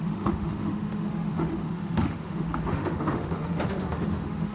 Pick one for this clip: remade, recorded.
remade